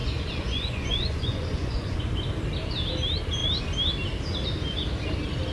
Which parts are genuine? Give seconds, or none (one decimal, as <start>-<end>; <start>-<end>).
2.0-5.5